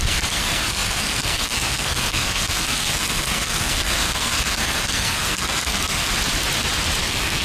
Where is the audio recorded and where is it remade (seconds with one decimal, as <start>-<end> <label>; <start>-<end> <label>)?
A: 0.0-6.1 remade; 6.1-7.0 recorded; 7.0-7.4 remade